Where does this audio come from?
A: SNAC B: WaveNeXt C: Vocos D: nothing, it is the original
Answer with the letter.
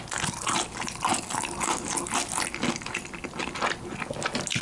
D